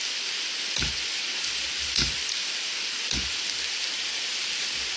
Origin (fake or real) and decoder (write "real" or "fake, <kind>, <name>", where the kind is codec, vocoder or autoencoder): real